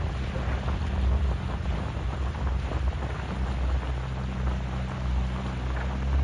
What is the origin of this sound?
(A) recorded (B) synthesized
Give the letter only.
A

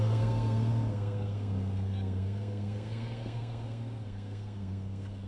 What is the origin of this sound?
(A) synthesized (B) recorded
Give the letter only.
A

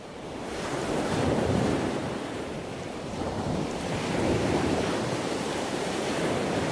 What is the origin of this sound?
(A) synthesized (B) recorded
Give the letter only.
A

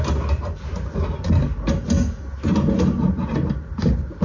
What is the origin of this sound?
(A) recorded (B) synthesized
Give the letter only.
A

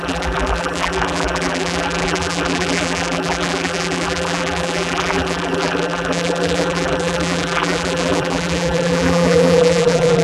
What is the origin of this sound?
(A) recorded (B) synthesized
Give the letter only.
B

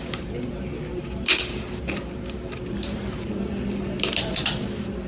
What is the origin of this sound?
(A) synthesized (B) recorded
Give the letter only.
B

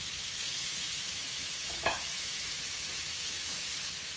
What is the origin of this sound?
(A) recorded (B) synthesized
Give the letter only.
B